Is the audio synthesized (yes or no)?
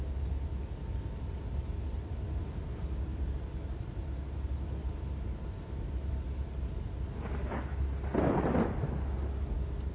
no